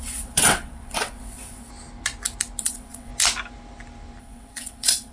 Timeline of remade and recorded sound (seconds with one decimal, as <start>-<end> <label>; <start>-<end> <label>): 0.0-1.7 remade; 1.7-2.6 recorded; 2.6-3.1 remade; 3.1-4.2 recorded; 4.2-5.1 remade